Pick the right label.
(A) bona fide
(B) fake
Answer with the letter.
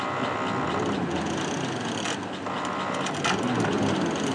A